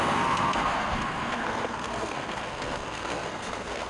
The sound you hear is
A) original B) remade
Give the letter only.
B